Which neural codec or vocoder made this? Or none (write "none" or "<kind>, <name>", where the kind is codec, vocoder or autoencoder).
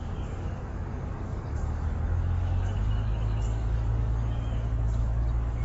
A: codec, DAC